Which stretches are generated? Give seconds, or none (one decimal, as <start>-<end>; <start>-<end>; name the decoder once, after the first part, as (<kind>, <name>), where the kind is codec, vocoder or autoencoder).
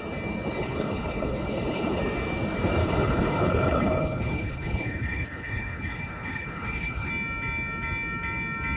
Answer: 0.6-2.0 (codec, HILCodec); 2.8-7.1